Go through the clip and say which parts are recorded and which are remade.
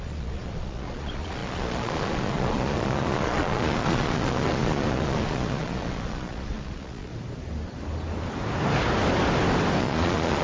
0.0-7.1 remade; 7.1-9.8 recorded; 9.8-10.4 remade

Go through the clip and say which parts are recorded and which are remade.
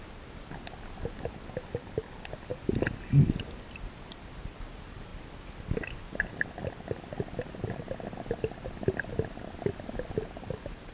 0.0-10.9 recorded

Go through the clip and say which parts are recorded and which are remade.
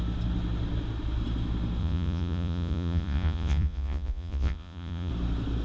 0.0-1.8 recorded; 1.8-5.1 remade; 5.1-5.6 recorded